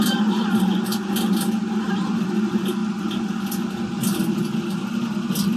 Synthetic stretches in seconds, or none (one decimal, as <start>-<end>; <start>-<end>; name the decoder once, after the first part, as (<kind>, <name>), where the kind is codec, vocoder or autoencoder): none